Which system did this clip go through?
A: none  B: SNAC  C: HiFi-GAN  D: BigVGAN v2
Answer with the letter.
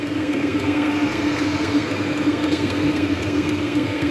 B